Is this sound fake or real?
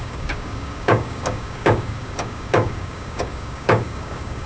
fake